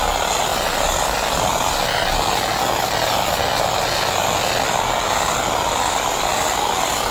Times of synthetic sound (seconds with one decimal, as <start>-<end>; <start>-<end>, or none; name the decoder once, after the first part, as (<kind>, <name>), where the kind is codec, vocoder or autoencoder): none

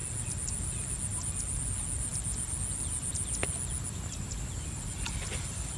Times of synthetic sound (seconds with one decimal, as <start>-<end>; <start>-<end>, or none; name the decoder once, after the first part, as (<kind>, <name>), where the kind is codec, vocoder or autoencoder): none

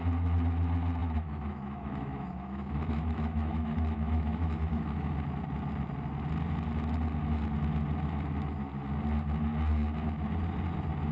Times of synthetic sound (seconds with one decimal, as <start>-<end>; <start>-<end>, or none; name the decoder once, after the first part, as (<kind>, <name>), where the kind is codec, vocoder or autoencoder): 1.0-5.1 (autoencoder, DAC-VAE)

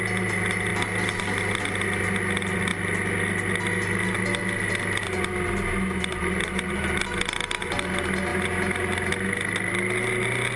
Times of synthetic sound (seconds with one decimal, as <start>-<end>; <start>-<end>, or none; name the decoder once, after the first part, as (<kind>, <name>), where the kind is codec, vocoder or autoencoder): none

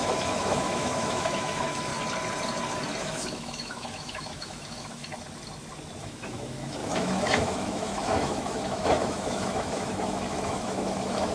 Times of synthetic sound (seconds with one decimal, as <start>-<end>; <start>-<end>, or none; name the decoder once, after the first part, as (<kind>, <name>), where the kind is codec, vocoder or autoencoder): 0.0-1.9 (autoencoder, DAC-VAE); 3.0-5.1; 6.0-11.3